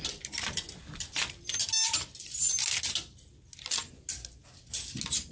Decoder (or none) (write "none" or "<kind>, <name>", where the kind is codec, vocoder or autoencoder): none